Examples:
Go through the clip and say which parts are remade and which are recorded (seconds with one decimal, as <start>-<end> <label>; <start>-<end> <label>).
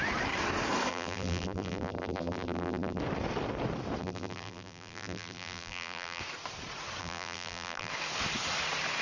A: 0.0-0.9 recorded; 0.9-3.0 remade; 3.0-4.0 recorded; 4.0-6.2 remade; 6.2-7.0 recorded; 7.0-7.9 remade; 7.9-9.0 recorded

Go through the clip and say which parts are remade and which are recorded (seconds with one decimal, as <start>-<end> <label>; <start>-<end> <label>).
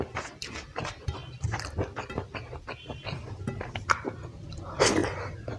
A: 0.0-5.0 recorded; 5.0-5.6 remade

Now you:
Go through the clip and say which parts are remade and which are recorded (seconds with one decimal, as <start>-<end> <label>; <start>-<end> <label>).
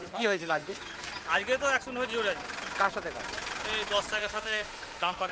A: 0.0-0.8 remade; 0.8-4.2 recorded; 4.2-5.3 remade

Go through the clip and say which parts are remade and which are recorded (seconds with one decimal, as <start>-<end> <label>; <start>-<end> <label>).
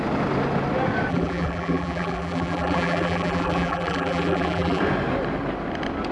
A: 0.0-1.1 recorded; 1.1-4.8 remade; 4.8-6.1 recorded